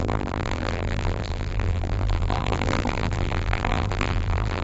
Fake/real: fake